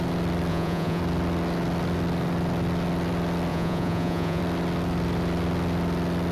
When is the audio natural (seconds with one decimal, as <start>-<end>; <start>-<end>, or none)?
0.0-0.5; 1.0-3.5; 4.4-6.3